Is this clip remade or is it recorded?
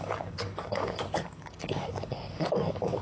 remade